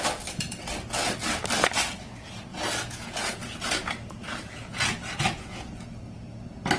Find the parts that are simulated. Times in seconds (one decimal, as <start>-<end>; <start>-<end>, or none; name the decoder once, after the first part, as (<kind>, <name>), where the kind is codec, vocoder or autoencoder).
2.5-5.6 (vocoder, Vocos)